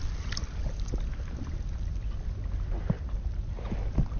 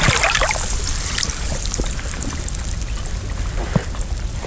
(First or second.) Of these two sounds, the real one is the first